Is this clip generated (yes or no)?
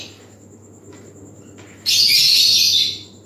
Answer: no